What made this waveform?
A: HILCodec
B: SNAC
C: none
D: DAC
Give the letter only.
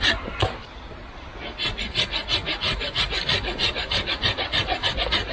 C